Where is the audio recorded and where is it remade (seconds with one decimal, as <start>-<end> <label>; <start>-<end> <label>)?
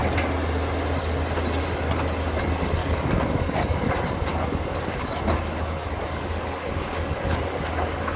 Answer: 0.0-2.8 recorded; 2.8-3.9 remade; 3.9-4.3 recorded; 4.3-8.2 remade